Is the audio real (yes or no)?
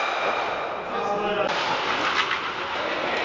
yes